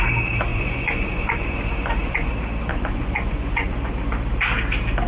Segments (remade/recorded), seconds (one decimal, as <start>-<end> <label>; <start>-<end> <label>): 0.0-0.5 recorded; 0.5-2.3 remade; 2.3-2.7 recorded; 2.7-3.9 remade; 3.9-5.1 recorded